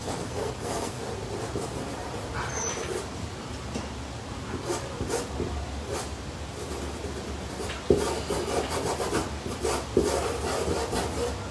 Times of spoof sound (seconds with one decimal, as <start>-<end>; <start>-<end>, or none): 0.0-1.0